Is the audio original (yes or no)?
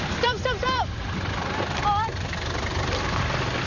no